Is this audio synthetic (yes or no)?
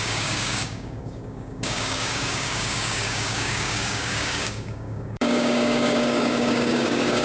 yes